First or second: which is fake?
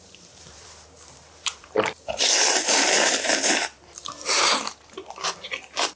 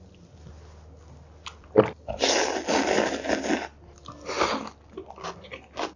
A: first